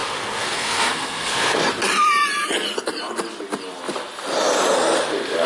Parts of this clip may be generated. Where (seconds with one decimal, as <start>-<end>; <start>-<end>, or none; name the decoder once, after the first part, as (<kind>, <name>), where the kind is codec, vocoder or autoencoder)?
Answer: 0.0-1.6 (codec, SNAC)